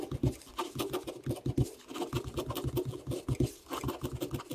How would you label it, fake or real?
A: real